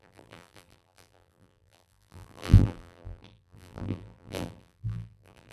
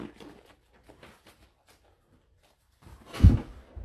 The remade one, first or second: first